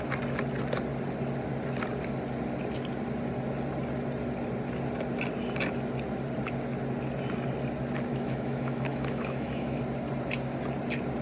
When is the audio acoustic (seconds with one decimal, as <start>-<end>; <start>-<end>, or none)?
0.0-8.1; 9.8-11.2